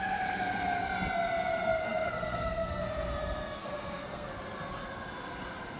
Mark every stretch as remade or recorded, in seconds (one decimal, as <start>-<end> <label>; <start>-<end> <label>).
0.0-1.8 recorded; 1.8-2.8 remade; 2.8-3.6 recorded; 3.6-4.3 remade; 4.3-5.8 recorded